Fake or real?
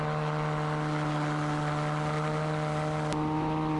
real